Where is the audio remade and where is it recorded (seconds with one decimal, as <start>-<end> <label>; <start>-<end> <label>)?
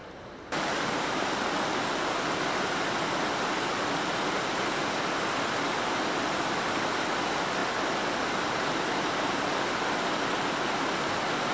0.0-11.5 recorded